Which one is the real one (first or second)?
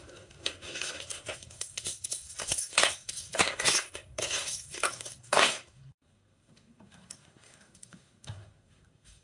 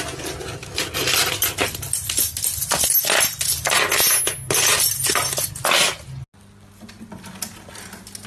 second